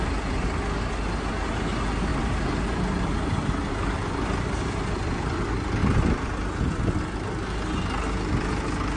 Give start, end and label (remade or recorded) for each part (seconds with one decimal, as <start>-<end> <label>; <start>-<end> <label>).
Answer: 0.0-2.1 recorded; 2.1-3.7 remade; 3.7-9.0 recorded